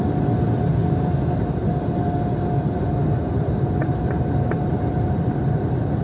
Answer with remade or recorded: recorded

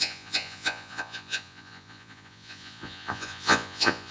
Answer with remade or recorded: remade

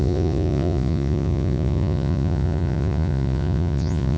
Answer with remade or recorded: remade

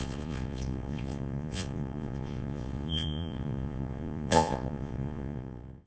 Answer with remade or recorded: remade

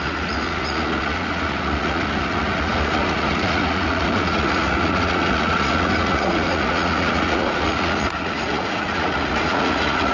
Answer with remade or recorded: remade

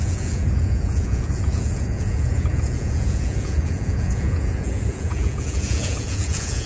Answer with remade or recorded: remade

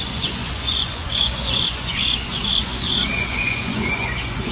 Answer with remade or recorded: remade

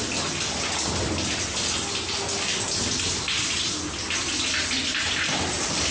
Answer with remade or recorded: recorded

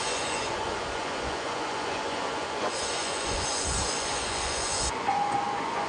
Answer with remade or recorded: remade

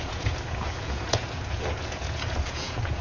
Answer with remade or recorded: remade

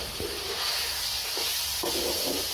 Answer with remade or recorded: recorded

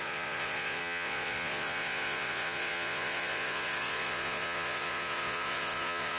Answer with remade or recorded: remade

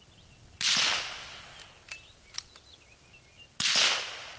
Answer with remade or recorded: recorded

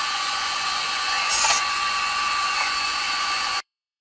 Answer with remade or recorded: remade